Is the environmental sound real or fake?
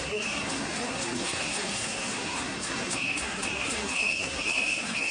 fake